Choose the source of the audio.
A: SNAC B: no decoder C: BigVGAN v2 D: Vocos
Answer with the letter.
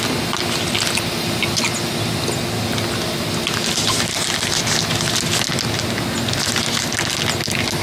B